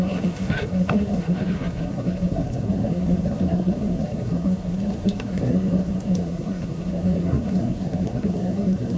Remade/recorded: remade